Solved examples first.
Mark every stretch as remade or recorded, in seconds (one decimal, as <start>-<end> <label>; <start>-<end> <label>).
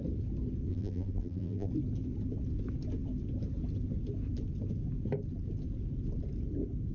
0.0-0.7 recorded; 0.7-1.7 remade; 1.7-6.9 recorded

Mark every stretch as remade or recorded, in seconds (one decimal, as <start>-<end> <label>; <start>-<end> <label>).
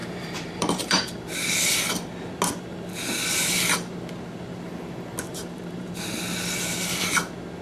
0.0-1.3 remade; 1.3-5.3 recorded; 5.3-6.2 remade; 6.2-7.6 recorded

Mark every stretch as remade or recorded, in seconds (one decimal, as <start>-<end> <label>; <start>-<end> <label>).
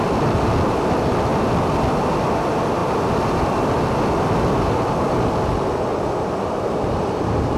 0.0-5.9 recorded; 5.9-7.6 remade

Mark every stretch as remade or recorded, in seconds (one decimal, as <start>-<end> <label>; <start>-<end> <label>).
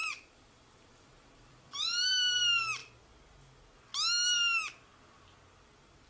0.0-2.1 remade; 2.1-6.1 recorded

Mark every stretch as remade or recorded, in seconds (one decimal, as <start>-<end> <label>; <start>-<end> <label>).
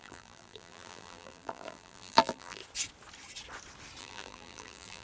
0.0-2.6 remade; 2.6-4.0 recorded; 4.0-5.0 remade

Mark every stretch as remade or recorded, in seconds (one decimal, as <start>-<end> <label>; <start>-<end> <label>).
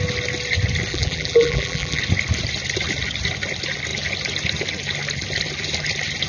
0.0-0.9 recorded; 0.9-2.0 remade; 2.0-6.3 recorded